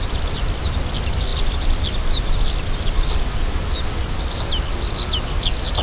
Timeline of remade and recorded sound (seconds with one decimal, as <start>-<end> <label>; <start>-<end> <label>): 0.0-5.8 recorded